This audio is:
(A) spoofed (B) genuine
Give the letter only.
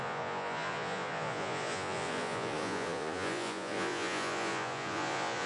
A